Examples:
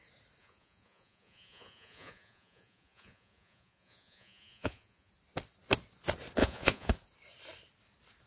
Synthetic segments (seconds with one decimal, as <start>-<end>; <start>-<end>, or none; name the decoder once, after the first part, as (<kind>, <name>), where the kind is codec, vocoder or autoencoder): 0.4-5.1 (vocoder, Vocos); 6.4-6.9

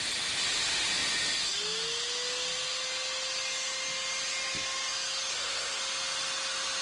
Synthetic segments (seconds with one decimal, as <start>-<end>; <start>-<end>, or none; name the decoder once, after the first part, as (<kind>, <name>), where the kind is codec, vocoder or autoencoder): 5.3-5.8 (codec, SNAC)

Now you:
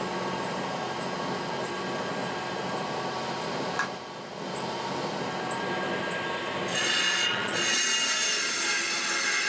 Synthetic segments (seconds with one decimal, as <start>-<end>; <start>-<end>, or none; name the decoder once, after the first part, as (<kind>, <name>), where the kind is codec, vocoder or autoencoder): 6.7-7.8 (vocoder, Vocos)